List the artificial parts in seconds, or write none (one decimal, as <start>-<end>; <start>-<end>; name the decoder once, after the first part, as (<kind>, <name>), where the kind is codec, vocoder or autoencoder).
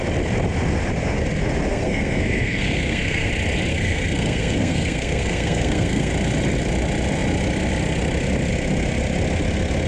1.7-3.3 (codec, SNAC); 3.7-6.1